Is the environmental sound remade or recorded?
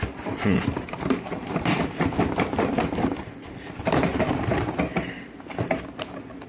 remade